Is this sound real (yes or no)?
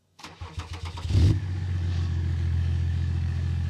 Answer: no